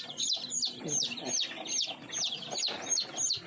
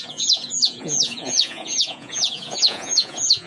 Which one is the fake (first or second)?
second